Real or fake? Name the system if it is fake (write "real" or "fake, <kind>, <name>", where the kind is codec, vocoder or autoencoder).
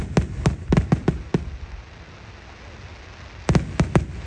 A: real